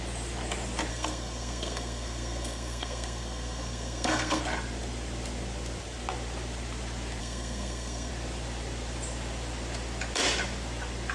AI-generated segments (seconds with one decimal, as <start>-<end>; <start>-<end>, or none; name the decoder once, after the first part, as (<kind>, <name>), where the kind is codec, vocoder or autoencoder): 0.9-4.4 (codec, SNAC); 7.2-8.1